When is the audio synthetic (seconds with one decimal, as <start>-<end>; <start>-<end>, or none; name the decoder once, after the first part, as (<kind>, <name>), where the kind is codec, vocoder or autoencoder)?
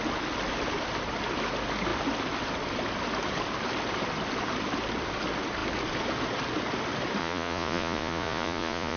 7.2-9.0 (vocoder, Vocos)